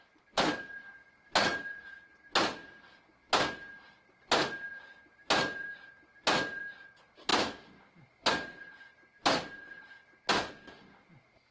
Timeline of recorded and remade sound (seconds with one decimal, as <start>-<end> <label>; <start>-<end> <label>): 0.0-11.5 recorded